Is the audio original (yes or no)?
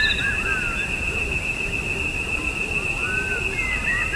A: yes